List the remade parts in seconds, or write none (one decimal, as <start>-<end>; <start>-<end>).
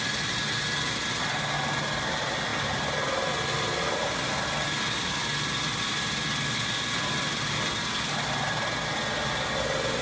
none